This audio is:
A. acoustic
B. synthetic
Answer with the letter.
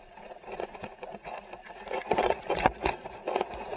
B